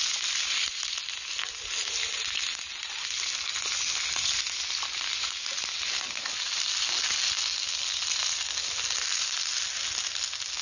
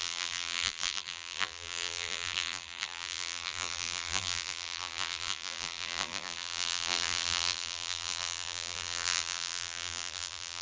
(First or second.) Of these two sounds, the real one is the first